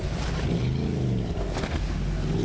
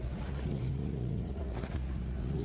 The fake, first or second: second